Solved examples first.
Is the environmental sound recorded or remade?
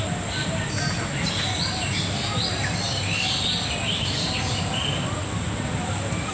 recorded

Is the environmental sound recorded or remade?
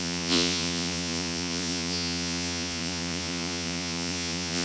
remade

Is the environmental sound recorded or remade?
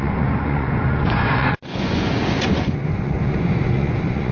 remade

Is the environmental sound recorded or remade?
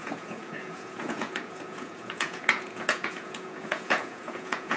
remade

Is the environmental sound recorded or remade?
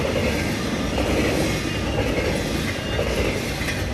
recorded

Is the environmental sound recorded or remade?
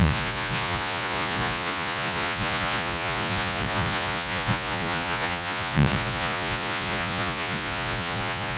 remade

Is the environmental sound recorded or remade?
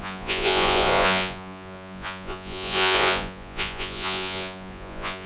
remade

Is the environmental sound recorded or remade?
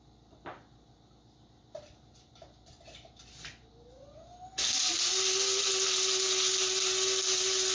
recorded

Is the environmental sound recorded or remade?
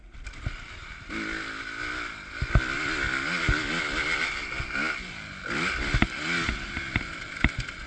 recorded